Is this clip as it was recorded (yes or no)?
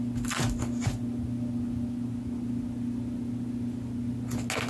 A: yes